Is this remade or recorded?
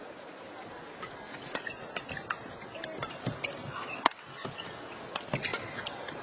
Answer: recorded